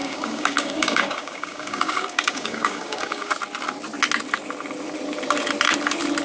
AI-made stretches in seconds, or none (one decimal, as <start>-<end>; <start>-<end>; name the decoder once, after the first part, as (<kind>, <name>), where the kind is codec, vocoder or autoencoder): 0.0-3.3 (codec, DAC)